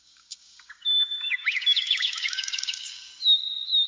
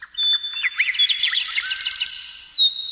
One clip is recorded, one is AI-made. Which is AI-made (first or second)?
first